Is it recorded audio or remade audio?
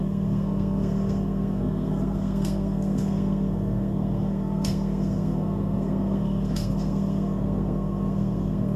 remade